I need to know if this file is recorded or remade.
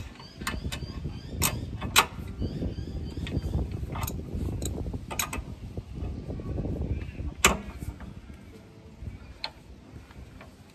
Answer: recorded